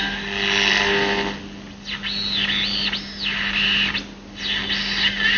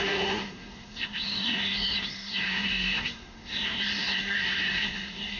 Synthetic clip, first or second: second